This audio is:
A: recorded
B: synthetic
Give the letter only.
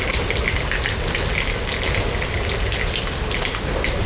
A